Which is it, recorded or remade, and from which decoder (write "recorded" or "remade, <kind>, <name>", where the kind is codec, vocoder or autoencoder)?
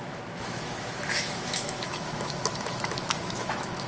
remade, autoencoder, DAC-VAE